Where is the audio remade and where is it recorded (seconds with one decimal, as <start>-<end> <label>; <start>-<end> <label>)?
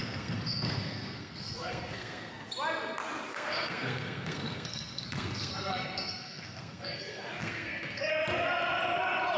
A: 0.0-2.5 remade; 2.5-3.3 recorded; 3.3-8.1 remade; 8.1-9.4 recorded